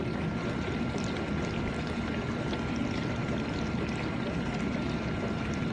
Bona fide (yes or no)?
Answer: yes